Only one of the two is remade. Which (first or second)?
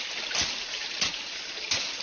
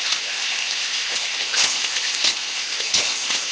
second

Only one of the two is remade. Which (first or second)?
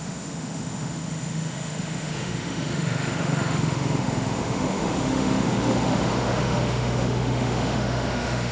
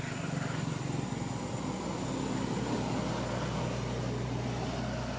first